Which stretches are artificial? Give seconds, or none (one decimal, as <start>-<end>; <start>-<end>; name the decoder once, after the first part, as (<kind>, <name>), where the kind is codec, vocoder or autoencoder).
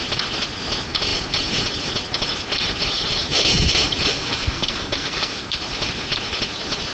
4.1-5.6 (codec, SNAC)